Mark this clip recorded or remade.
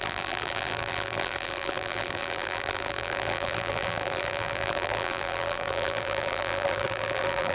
remade